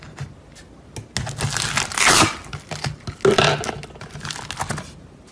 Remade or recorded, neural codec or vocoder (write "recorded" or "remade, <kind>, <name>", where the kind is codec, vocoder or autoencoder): recorded